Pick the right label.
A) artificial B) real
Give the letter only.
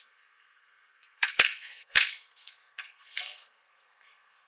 A